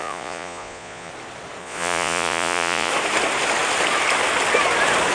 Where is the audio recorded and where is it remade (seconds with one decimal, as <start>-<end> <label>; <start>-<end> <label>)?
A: 0.0-1.1 remade; 1.1-1.6 recorded; 1.6-2.9 remade; 2.9-5.1 recorded